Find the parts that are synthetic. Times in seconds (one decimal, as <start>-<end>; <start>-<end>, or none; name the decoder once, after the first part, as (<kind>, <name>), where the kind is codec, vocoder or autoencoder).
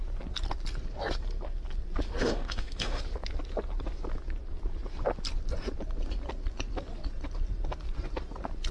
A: 2.2-3.0 (autoencoder, DAC-VAE)